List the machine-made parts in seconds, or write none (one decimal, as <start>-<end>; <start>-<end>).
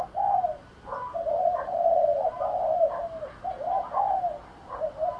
none